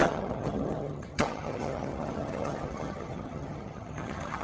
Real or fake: fake